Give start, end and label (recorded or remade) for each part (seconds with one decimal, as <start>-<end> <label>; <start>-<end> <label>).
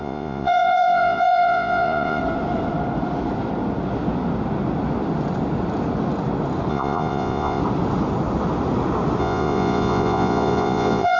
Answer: 0.0-2.2 remade; 2.2-6.7 recorded; 6.7-7.6 remade; 7.6-9.2 recorded; 9.2-11.2 remade